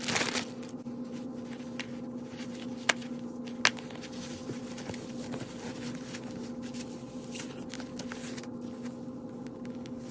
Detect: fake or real real